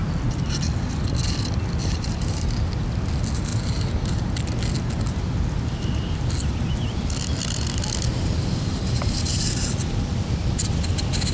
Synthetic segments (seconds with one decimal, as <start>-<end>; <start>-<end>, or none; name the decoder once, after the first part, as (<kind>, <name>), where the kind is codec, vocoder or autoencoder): 1.8-2.7 (vocoder, BigVGAN v2); 8.7-9.5